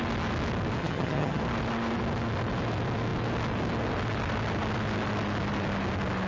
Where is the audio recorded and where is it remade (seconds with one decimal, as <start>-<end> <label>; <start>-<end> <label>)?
0.0-0.8 recorded; 0.8-1.4 remade; 1.4-6.3 recorded